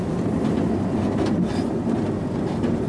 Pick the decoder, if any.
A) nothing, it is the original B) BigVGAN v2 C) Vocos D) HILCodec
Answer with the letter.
A